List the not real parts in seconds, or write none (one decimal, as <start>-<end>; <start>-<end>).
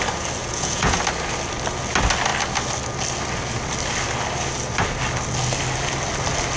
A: 0.4-1.0